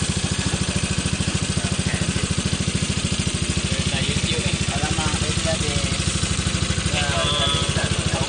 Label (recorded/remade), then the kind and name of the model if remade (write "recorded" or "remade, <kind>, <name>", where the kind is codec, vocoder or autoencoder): recorded